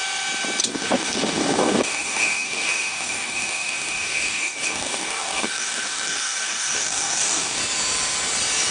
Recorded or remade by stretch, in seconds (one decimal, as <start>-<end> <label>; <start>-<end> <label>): 0.0-0.6 recorded; 0.6-7.6 remade; 7.6-8.7 recorded